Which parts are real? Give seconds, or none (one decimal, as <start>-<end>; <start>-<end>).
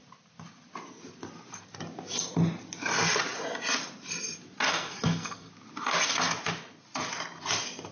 0.0-4.7; 5.5-7.9